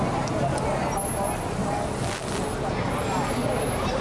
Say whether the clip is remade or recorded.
recorded